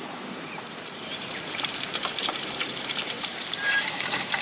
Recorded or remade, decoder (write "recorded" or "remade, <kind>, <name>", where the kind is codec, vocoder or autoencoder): remade, vocoder, BigVGAN v2